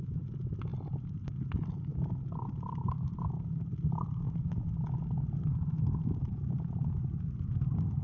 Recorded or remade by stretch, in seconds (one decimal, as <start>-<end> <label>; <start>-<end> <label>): 0.0-0.7 recorded; 0.7-1.3 remade; 1.3-1.9 recorded; 1.9-6.6 remade; 6.6-8.0 recorded